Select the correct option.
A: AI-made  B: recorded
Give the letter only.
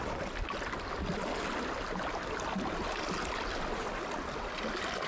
B